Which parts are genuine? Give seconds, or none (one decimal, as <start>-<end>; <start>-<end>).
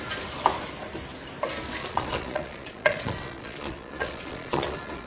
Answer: 0.0-1.8